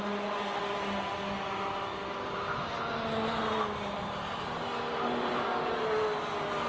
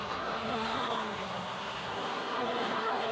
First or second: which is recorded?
first